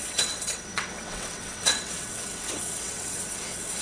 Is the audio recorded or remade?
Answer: remade